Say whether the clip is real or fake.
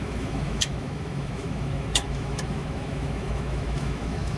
fake